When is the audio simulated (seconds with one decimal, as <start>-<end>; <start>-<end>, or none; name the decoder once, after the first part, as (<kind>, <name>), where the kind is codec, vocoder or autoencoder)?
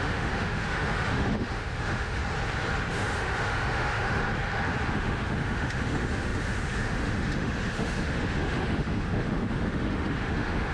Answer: 0.0-2.2 (autoencoder, DAC-VAE); 2.9-4.2; 4.9-10.7